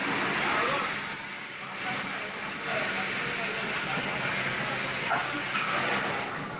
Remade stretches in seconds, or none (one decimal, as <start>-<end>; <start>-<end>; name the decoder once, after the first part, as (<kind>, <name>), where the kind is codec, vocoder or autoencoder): 0.0-4.0 (vocoder, BigVGAN v2)